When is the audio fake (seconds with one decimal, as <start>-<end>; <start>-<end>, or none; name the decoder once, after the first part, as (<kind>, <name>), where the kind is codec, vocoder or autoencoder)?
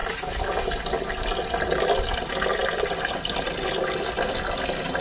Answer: none